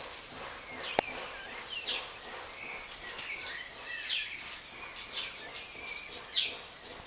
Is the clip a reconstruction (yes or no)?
no